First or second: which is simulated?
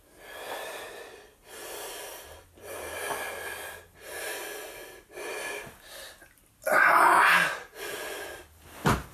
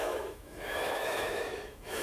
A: second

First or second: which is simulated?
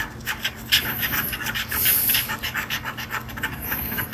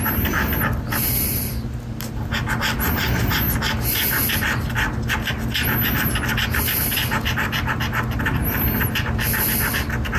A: first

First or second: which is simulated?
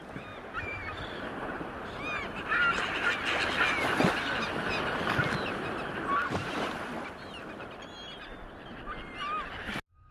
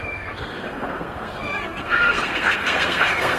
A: second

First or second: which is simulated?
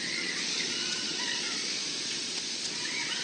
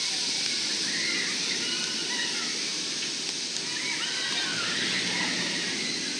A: first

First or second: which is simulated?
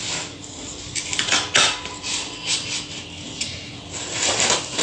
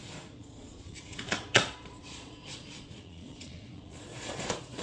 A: second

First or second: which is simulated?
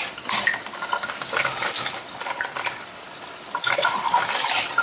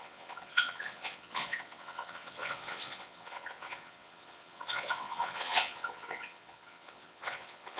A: second